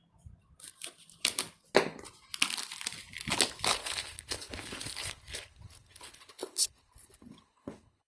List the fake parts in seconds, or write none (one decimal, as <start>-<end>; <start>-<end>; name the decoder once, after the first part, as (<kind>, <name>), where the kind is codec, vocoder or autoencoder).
3.7-8.1 (codec, HILCodec)